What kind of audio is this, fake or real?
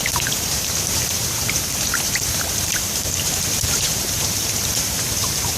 fake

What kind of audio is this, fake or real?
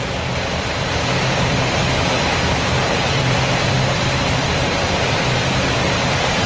fake